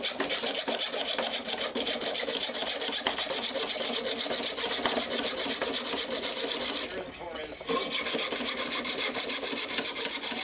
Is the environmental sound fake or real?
real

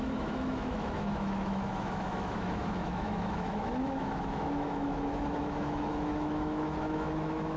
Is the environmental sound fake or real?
fake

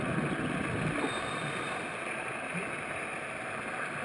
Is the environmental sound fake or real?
real